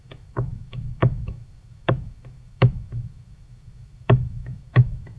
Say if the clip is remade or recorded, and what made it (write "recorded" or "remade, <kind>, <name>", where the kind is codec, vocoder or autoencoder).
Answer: remade, autoencoder, DAC-VAE